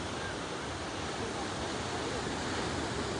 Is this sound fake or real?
real